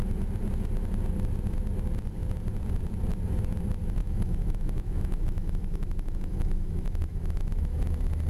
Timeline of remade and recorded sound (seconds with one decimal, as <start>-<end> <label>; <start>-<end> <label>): 0.0-4.0 recorded; 4.0-7.8 remade; 7.8-8.3 recorded